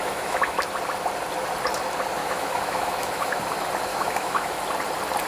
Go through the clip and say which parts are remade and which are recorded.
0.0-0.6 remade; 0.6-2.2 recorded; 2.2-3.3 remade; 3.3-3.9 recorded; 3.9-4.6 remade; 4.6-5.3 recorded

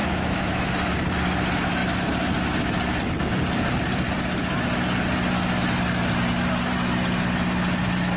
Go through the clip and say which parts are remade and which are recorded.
0.0-0.7 remade; 0.7-8.2 recorded

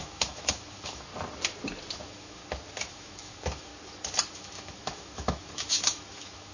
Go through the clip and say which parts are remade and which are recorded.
0.0-1.1 remade; 1.1-2.0 recorded; 2.0-2.4 remade; 2.4-2.9 recorded; 2.9-3.7 remade; 3.7-4.3 recorded; 4.3-6.5 remade

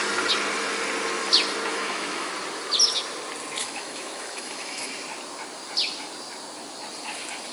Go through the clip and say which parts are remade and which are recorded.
0.0-1.7 recorded; 1.7-2.3 remade; 2.3-3.6 recorded; 3.6-4.9 remade; 4.9-7.5 recorded

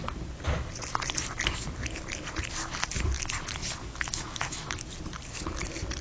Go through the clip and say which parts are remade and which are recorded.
0.0-3.8 recorded; 3.8-4.7 remade; 4.7-6.0 recorded

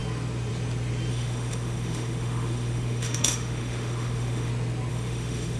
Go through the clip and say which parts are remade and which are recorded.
0.0-1.1 recorded; 1.1-4.5 remade; 4.5-4.9 recorded; 4.9-5.6 remade